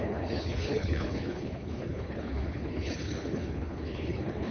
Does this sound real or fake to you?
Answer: fake